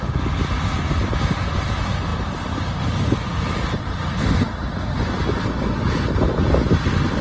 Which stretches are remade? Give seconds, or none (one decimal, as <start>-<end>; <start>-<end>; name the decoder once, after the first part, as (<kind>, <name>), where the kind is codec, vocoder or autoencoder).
none